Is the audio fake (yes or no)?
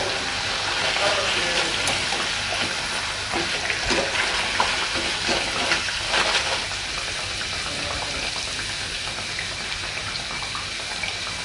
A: no